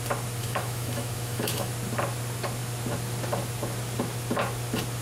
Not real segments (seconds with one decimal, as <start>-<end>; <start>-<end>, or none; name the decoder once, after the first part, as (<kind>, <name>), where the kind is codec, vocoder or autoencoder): 0.4-1.7 (autoencoder, DAC-VAE)